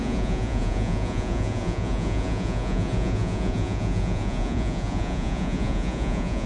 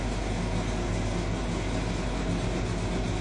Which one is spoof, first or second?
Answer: first